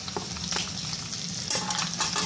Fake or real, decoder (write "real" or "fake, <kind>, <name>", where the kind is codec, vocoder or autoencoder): real